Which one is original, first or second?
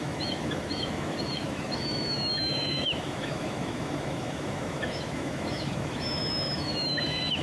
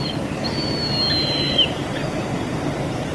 second